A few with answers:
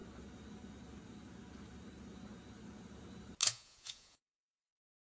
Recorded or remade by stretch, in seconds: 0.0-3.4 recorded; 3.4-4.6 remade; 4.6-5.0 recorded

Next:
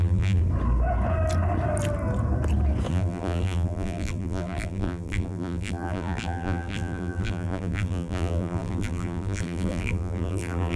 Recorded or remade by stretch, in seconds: 0.0-0.4 remade; 0.4-2.9 recorded; 2.9-10.8 remade

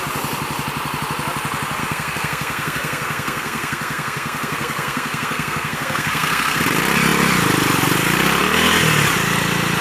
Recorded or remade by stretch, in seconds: 0.0-1.8 recorded; 1.8-6.6 remade; 6.6-9.8 recorded

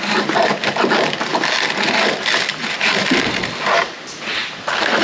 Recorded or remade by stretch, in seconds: 0.0-5.0 recorded

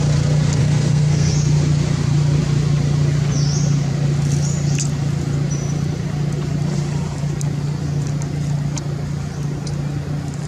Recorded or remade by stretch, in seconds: 0.0-0.6 recorded; 0.6-1.3 remade; 1.3-10.5 recorded

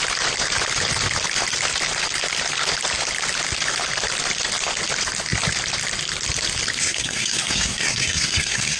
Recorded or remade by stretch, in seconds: 0.0-6.8 recorded; 6.8-8.8 remade